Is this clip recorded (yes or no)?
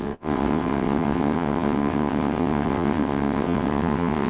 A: no